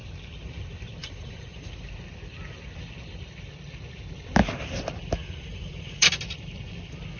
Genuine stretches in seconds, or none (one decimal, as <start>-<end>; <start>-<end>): 0.0-1.0; 1.8-5.2; 6.1-7.2

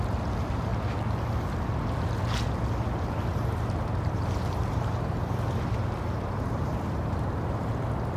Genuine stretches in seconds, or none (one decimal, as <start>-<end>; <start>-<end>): 0.0-3.3; 7.7-8.2